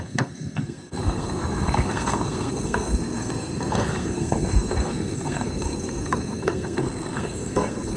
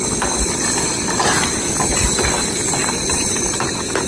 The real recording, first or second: second